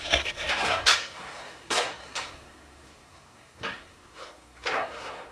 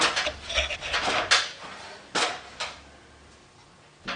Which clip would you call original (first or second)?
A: second